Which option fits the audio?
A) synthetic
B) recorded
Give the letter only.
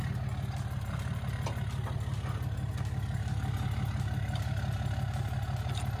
B